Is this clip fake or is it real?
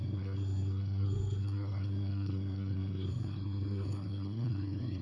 fake